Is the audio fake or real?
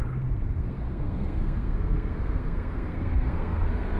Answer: fake